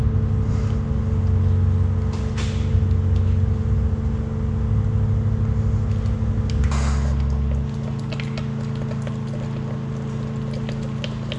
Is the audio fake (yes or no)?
no